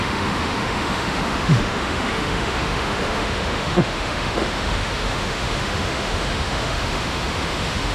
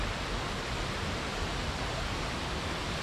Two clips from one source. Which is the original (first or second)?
second